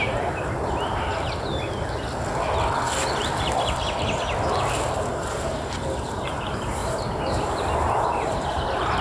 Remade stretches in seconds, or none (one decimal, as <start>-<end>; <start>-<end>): 0.0-1.1; 5.1-9.0